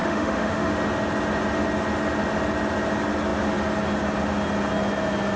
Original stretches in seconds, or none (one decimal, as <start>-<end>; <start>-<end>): 0.7-5.4